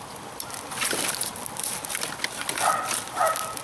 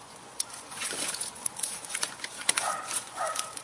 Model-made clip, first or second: second